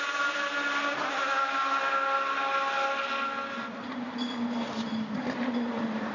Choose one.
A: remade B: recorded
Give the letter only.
B